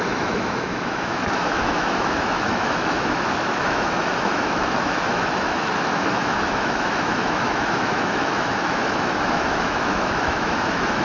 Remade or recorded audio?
remade